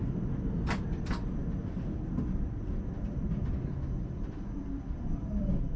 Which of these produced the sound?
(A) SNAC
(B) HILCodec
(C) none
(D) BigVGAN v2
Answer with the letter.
D